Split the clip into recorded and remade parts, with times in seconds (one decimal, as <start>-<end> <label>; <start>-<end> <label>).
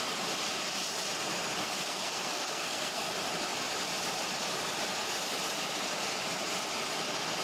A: 0.0-1.6 recorded; 1.6-3.1 remade; 3.1-7.4 recorded